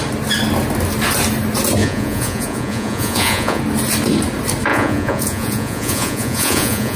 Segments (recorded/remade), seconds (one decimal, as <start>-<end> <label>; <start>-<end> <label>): 0.0-1.8 recorded; 1.8-3.6 remade; 3.6-4.7 recorded; 4.7-7.0 remade